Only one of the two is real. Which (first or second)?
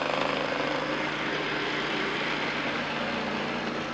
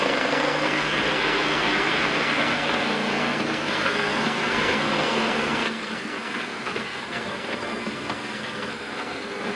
first